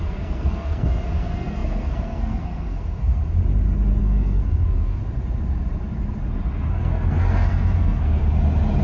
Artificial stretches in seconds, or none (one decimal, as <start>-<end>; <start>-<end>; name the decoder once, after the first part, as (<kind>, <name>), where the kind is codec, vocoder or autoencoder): 0.0-3.2 (codec, SNAC); 4.0-5.0; 6.7-8.2